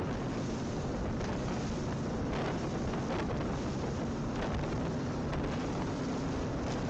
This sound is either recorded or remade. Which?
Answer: remade